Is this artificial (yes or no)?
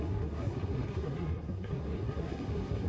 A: yes